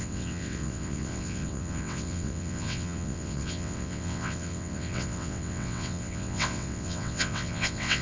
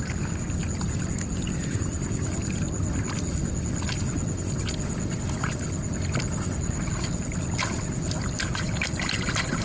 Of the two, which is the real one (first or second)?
second